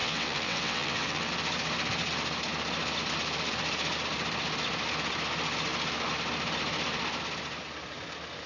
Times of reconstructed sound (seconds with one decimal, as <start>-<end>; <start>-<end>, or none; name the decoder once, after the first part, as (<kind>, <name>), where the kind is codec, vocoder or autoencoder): 0.0-1.3 (vocoder, WaveNeXt)